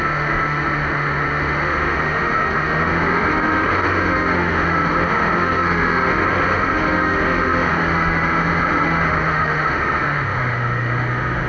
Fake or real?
fake